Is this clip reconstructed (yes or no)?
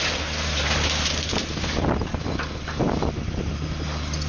no